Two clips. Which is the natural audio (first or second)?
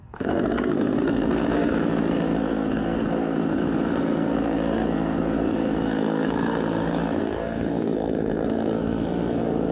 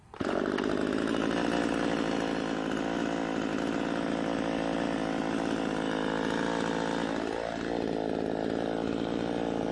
second